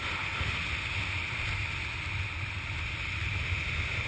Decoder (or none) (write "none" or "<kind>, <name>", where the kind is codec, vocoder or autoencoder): none